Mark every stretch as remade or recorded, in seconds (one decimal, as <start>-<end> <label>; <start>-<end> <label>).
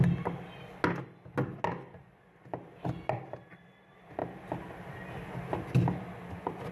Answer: 0.0-6.7 recorded